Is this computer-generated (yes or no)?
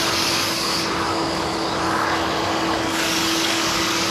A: yes